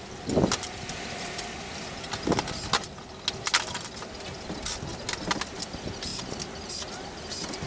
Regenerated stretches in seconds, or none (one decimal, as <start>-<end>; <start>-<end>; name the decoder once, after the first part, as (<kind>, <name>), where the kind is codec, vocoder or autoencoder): none